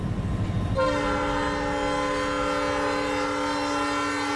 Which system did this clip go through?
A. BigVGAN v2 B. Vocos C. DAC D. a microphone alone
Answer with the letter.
D